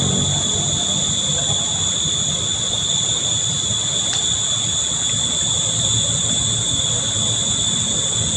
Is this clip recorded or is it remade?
recorded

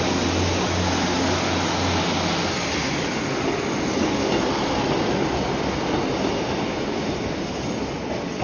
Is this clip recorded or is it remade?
recorded